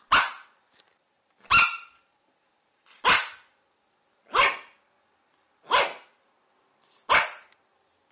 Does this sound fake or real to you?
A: real